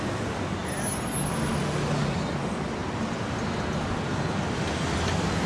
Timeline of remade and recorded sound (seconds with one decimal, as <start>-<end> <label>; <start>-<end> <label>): 0.0-5.5 recorded